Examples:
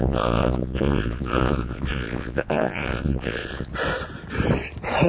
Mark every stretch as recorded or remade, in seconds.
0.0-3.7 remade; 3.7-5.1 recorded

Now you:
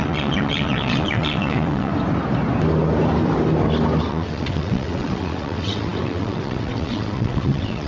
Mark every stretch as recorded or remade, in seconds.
0.0-1.9 remade; 1.9-4.1 recorded; 4.1-7.9 remade